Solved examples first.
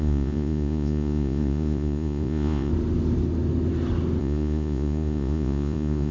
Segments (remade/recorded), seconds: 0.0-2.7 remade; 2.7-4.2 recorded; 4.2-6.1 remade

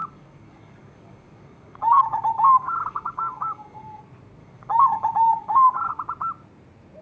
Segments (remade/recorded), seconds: 0.0-4.0 remade; 4.0-4.4 recorded; 4.4-5.9 remade; 5.9-7.0 recorded